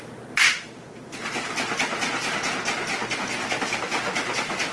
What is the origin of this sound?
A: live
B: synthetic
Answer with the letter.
A